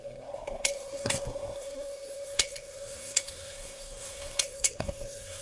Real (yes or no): no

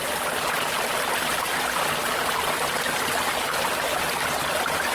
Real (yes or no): yes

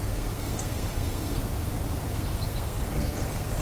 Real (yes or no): no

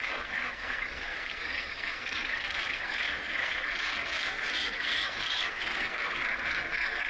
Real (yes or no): no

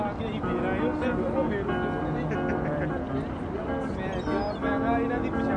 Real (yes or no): yes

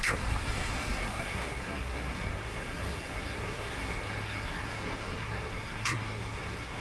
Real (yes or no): no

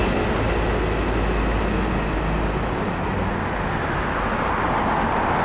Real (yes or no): yes